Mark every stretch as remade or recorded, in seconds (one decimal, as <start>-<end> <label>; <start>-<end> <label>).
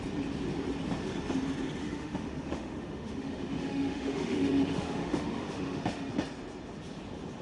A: 0.0-1.8 recorded; 1.8-6.1 remade; 6.1-7.4 recorded